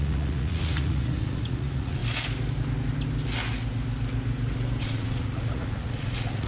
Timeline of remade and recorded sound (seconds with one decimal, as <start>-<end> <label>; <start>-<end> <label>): 0.0-2.0 remade; 2.0-4.8 recorded; 4.8-6.5 remade